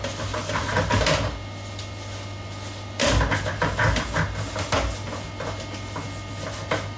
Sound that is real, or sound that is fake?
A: real